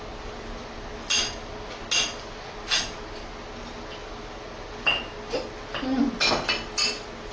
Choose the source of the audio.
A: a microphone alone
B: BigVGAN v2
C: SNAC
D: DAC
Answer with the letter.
A